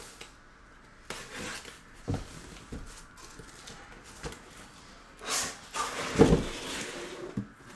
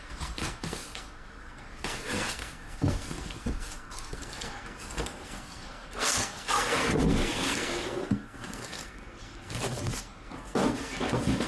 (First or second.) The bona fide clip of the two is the first